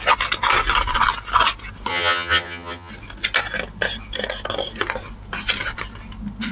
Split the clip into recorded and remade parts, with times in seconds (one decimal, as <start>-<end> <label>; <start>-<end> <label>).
0.0-1.9 recorded; 1.9-2.9 remade; 2.9-6.5 recorded